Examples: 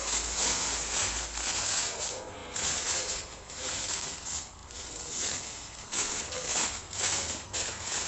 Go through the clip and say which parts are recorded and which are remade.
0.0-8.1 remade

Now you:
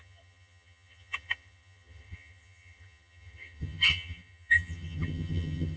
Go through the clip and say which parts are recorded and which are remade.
0.0-5.8 remade

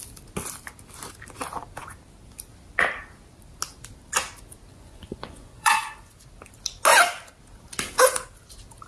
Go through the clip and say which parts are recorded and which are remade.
0.0-4.7 recorded; 4.7-6.1 remade; 6.1-8.9 recorded